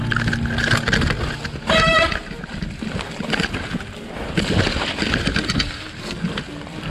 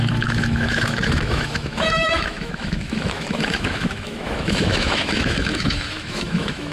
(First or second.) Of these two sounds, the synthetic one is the second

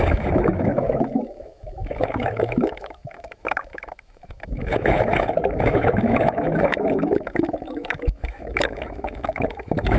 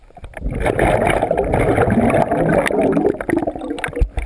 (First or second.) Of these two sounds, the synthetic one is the first